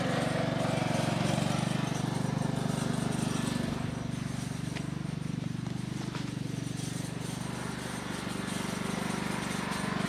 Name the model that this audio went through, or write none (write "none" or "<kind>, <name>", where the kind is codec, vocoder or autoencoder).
none